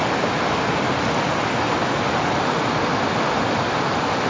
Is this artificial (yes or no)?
no